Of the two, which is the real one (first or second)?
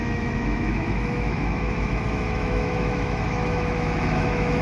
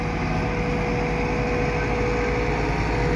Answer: second